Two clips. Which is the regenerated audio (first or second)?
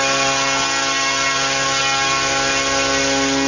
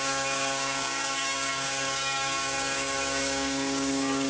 second